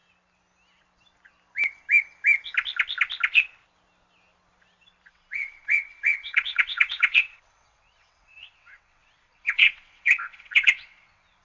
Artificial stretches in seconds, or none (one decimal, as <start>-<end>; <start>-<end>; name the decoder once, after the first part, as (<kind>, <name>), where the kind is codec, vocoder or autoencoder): 5.1-11.4 (vocoder, WaveNeXt)